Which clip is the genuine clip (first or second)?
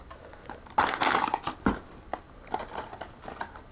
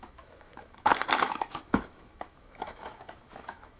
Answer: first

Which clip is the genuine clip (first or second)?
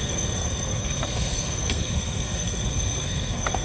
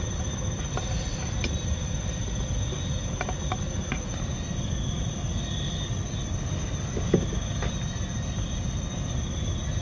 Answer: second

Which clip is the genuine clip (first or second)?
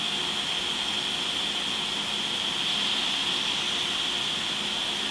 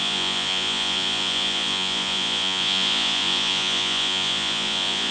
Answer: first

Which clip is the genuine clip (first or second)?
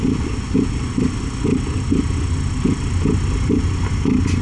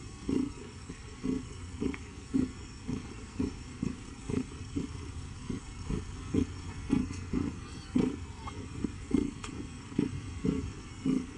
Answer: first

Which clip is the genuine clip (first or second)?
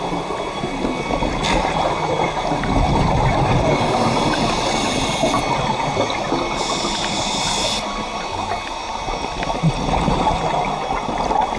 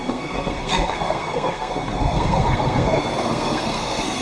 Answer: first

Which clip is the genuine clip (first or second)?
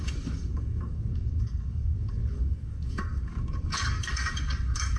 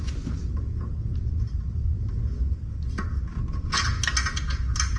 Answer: second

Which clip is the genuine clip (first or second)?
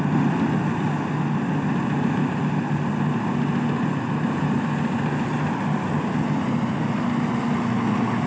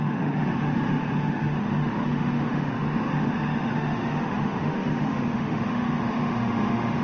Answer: first